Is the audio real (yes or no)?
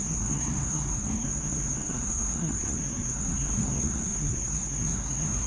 no